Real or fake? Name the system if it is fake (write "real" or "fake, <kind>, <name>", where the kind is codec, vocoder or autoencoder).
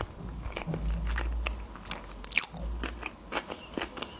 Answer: real